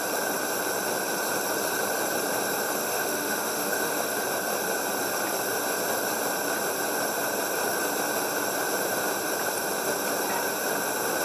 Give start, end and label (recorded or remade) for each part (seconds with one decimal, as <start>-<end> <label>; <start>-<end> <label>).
0.0-2.8 recorded; 2.8-4.2 remade; 4.2-11.2 recorded